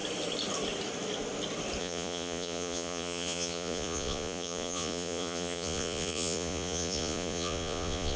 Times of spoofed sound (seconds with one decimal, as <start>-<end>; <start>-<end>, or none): 1.8-8.2